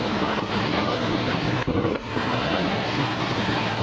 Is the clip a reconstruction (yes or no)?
yes